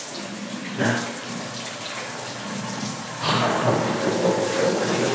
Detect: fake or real real